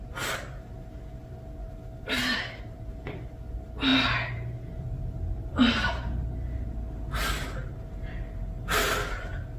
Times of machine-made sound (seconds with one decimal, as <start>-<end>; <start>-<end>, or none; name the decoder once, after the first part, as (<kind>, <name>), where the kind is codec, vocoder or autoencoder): none